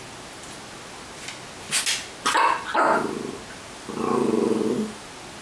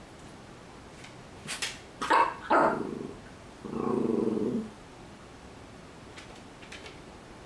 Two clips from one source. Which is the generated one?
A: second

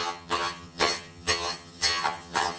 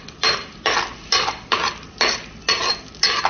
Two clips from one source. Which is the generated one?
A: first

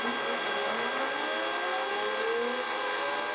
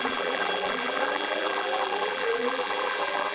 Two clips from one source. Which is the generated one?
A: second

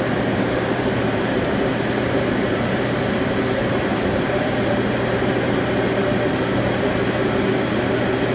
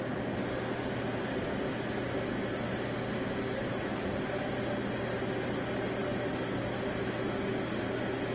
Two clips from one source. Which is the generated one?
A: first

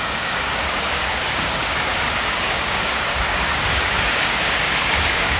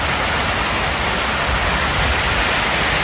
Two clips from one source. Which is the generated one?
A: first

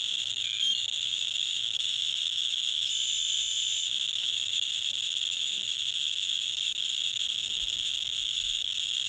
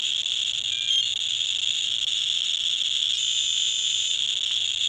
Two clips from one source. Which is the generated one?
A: first